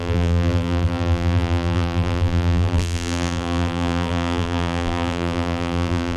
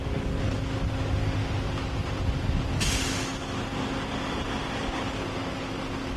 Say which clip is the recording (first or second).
second